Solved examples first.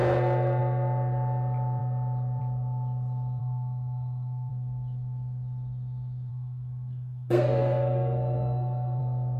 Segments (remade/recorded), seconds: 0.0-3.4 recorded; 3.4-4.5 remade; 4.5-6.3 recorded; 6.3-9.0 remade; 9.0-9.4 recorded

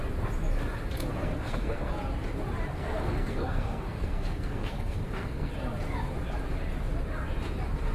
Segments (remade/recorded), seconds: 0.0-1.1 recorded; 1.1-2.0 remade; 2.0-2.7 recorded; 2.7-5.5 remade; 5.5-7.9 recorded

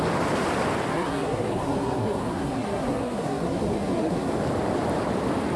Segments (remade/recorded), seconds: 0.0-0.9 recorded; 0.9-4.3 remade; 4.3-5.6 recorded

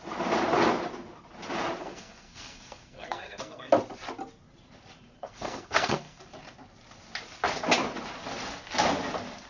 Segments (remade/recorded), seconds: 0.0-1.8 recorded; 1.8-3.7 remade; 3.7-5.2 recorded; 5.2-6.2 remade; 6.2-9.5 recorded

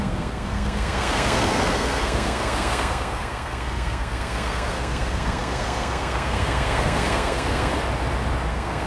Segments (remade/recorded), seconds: 0.0-7.7 remade; 7.7-8.5 recorded; 8.5-8.9 remade

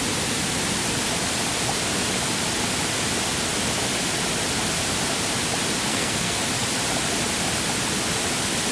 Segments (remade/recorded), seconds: 0.0-5.9 recorded; 5.9-6.4 remade; 6.4-8.7 recorded

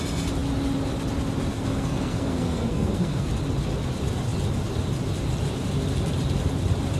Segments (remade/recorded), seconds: 0.0-1.5 recorded; 1.5-3.3 remade; 3.3-7.0 recorded

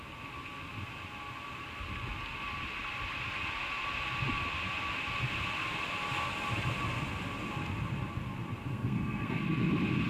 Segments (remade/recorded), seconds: 0.0-8.7 recorded; 8.7-9.4 remade; 9.4-10.1 recorded